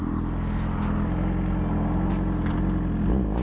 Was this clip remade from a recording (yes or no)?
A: no